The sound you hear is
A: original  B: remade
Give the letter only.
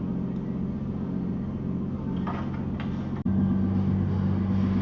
A